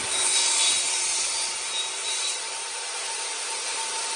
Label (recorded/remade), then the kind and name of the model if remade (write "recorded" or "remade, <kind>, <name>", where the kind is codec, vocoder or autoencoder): remade, vocoder, BigVGAN v2